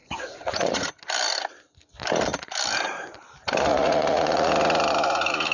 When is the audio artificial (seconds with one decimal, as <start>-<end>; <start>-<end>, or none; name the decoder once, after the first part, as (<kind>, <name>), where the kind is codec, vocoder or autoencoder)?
0.0-0.9 (vocoder, Vocos); 3.7-4.5